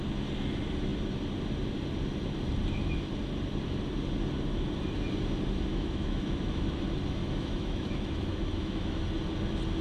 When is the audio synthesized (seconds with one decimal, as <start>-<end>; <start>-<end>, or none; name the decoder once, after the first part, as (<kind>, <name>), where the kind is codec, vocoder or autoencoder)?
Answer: 5.7-6.8 (autoencoder, DAC-VAE); 7.2-9.0

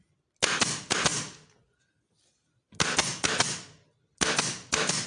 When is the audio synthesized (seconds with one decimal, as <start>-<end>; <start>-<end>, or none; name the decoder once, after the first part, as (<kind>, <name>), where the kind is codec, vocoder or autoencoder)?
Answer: none

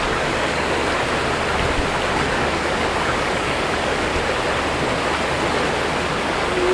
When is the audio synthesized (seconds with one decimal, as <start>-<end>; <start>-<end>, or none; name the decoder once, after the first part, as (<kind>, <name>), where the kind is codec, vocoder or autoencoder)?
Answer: 0.0-0.8 (codec, DAC); 2.1-4.1; 6.1-6.7

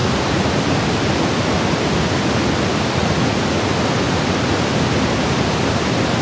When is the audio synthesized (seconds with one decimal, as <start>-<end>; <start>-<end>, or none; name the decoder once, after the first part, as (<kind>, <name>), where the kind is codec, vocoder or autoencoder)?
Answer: 0.0-0.5 (vocoder, Vocos); 3.0-3.7

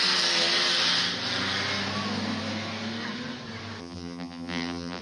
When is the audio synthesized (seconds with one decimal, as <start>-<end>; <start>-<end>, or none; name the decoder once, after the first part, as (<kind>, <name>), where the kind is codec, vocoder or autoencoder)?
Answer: 3.8-5.0 (vocoder, BigVGAN v2)